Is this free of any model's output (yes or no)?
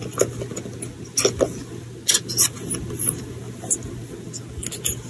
yes